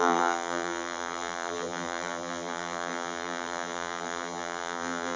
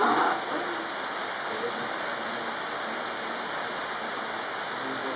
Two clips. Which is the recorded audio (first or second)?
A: second